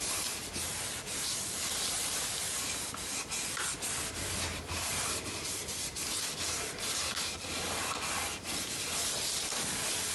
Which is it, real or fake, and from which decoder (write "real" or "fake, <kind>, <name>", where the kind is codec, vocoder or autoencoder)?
real